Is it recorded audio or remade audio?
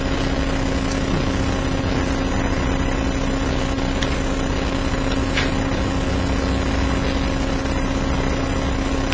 recorded